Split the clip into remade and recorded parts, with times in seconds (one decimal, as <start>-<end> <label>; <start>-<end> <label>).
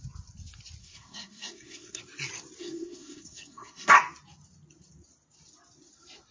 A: 0.0-0.8 recorded; 0.8-2.0 remade; 2.0-2.6 recorded; 2.6-3.9 remade; 3.9-6.3 recorded